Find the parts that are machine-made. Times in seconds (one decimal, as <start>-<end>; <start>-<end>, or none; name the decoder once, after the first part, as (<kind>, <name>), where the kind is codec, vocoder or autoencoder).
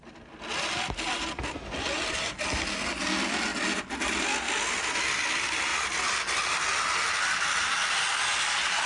none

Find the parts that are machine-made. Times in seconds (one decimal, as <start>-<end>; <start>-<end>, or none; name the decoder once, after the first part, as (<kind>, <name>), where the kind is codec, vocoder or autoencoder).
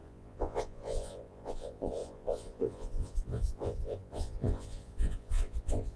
0.0-6.0 (vocoder, Vocos)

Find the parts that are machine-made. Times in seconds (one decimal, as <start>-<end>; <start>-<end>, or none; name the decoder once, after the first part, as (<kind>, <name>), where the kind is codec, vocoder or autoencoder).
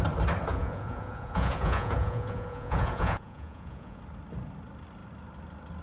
0.5-4.0 (vocoder, Vocos)